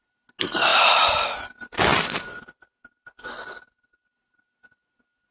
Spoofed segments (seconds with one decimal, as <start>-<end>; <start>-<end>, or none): none